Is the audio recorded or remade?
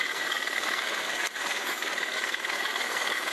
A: remade